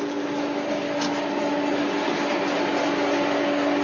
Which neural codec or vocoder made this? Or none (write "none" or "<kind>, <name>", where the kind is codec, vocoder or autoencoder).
none